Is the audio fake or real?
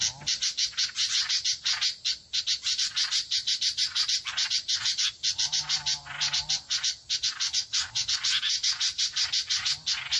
real